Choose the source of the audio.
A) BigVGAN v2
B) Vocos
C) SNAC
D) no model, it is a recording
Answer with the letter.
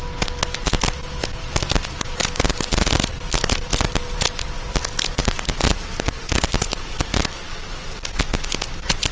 D